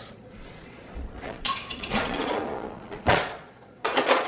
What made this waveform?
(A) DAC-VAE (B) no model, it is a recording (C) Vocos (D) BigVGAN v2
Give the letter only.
C